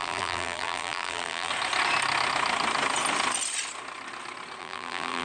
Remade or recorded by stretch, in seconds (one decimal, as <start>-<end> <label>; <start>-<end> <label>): 0.0-1.5 remade; 1.5-4.6 recorded; 4.6-5.2 remade